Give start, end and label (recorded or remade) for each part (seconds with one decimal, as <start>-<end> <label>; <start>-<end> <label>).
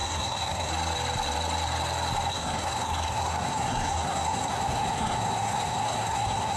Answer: 0.0-0.7 remade; 0.7-2.3 recorded; 2.3-6.6 remade